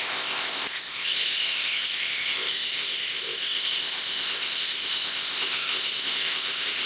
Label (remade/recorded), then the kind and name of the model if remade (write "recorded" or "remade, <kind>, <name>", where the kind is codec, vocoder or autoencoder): remade, codec, ZipCodec